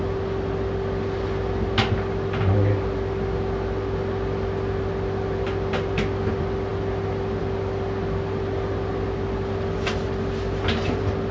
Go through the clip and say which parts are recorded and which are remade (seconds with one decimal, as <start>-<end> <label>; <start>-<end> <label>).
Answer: 0.0-11.3 recorded